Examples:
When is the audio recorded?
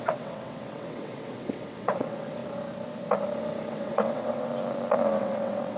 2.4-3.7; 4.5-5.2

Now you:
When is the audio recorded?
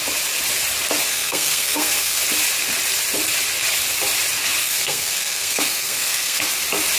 0.0-1.1; 2.2-4.6; 6.4-7.0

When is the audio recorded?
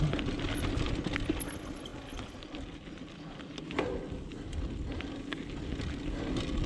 0.0-6.7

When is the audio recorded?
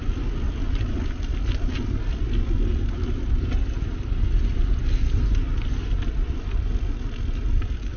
0.0-8.0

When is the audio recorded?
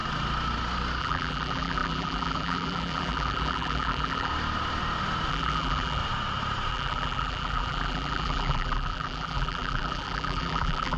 0.0-1.0; 4.3-5.3; 6.0-6.7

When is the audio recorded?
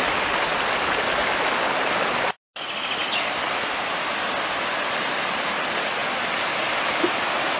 0.0-6.0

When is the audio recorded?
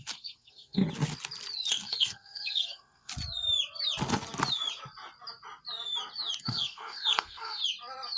0.8-1.7; 3.1-6.4; 7.6-8.2